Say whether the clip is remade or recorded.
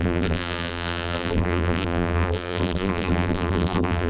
remade